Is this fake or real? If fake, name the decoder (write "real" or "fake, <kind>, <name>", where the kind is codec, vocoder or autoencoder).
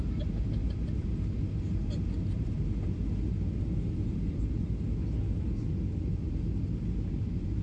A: real